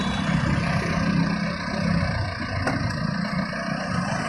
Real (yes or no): yes